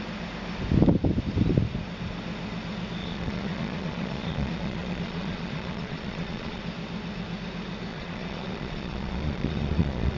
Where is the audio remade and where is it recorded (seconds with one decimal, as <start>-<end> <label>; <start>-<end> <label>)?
0.0-3.0 recorded; 3.0-6.6 remade; 6.6-7.9 recorded; 7.9-10.2 remade